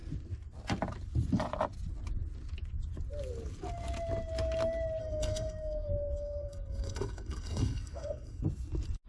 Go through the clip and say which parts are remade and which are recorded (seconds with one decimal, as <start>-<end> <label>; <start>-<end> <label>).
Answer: 0.0-5.0 recorded; 5.0-8.4 remade; 8.4-9.1 recorded